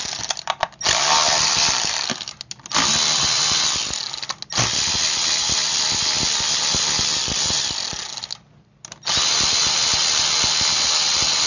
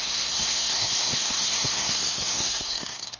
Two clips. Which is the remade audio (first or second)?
second